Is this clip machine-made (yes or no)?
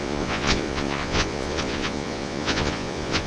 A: yes